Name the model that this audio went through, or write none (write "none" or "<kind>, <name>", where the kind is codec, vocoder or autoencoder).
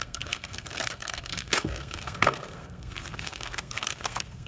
codec, SNAC